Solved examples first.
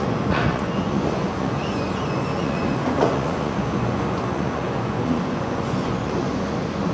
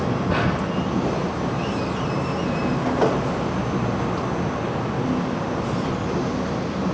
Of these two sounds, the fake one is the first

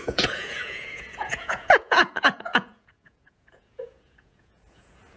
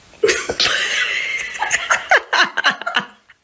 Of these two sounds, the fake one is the first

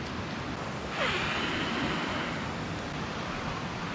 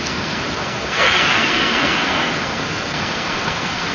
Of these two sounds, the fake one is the second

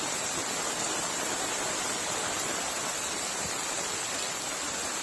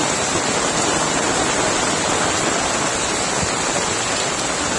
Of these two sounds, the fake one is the first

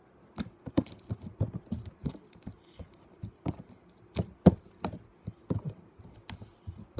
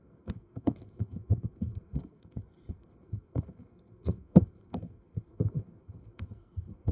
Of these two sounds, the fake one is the second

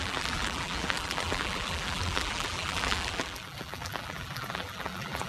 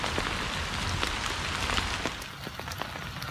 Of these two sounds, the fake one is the first